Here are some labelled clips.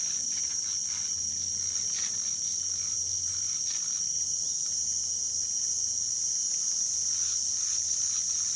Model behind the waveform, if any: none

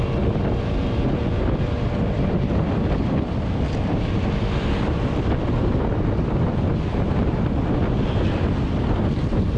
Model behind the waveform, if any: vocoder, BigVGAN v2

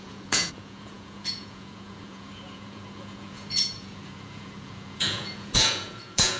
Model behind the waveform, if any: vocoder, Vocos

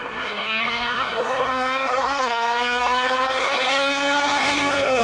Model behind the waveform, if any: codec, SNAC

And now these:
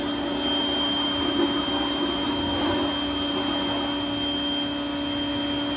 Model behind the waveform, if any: none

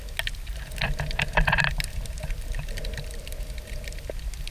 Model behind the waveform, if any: none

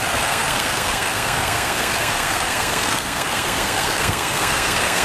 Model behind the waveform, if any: codec, SNAC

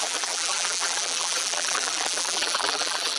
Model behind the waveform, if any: vocoder, BigVGAN v2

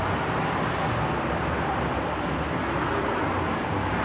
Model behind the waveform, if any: none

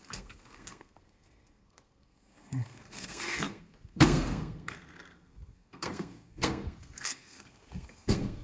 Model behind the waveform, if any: codec, SNAC